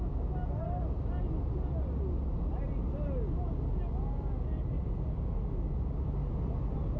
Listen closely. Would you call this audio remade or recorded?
recorded